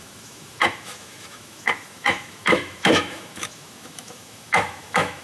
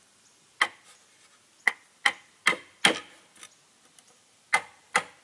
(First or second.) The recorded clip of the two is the second